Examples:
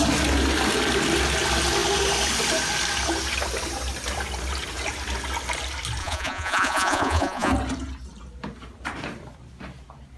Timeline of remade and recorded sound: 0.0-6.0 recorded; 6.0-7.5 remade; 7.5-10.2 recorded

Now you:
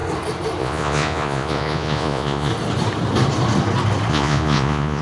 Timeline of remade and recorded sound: 0.0-0.6 recorded; 0.6-2.5 remade; 2.5-4.1 recorded; 4.1-5.0 remade